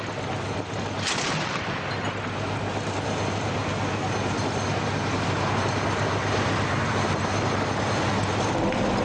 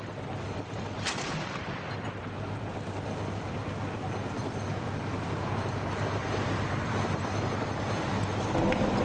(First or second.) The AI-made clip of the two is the second